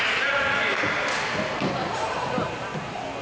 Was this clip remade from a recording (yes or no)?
no